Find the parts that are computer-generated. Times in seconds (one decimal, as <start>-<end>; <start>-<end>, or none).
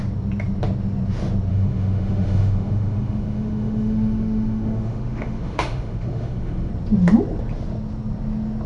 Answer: 1.5-6.7